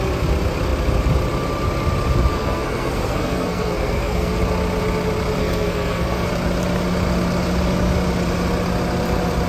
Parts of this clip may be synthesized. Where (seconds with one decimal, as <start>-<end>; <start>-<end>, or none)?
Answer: 2.3-4.4; 5.4-6.3